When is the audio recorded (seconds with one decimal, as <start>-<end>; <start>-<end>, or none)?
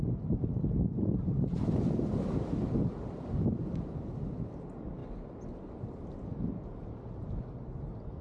0.0-8.2